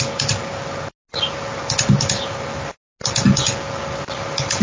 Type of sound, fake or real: real